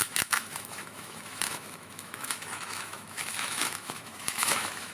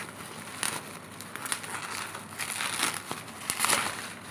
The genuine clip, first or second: second